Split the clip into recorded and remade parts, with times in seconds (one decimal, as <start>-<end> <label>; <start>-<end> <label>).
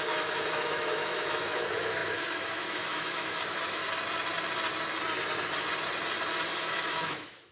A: 0.0-3.8 remade; 3.8-6.6 recorded; 6.6-7.5 remade